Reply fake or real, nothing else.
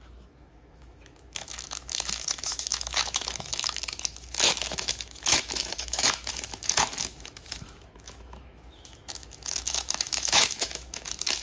fake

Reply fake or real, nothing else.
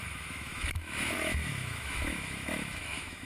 fake